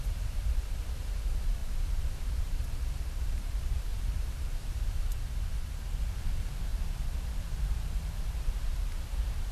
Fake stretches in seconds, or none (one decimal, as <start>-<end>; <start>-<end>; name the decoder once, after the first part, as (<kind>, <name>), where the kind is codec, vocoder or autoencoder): 0.0-5.1 (vocoder, BigVGAN v2); 6.0-9.5